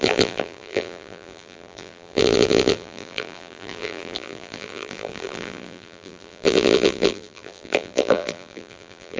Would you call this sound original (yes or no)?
no